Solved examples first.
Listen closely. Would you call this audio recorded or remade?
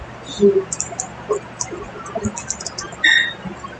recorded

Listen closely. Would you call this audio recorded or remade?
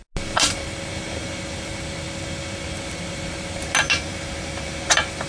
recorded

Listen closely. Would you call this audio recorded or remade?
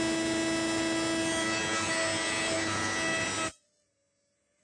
recorded